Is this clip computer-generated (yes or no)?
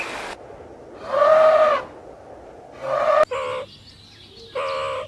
no